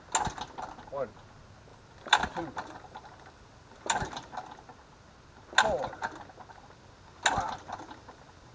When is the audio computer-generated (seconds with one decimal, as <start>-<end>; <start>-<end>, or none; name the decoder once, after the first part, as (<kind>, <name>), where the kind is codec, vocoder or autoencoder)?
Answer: 1.7-4.5 (vocoder, BigVGAN v2)